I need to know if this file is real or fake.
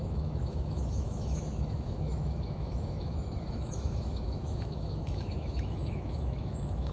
fake